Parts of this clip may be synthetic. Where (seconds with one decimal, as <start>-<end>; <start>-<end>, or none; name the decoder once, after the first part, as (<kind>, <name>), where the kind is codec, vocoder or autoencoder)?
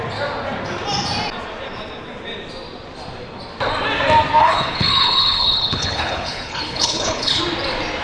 4.4-7.4 (codec, HILCodec)